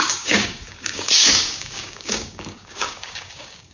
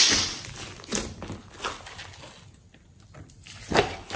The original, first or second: second